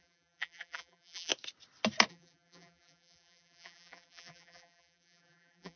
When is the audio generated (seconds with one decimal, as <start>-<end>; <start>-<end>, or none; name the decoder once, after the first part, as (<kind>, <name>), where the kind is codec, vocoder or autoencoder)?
0.0-1.3 (vocoder, BigVGAN v2); 2.1-5.8